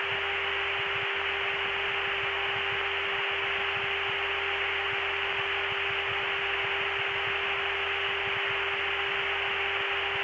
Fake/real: real